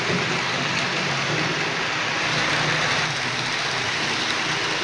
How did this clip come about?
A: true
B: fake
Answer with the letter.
A